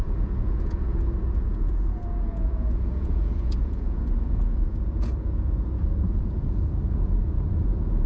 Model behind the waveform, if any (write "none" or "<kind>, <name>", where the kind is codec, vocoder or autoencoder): vocoder, Vocos